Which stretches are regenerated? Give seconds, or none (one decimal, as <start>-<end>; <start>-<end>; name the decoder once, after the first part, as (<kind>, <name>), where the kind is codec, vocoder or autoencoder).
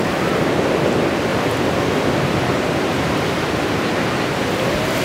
1.3-4.3 (vocoder, BigVGAN v2)